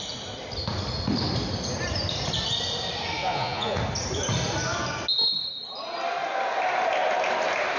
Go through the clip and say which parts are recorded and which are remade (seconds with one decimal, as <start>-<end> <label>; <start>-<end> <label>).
0.0-3.2 recorded; 3.2-3.8 remade; 3.8-7.8 recorded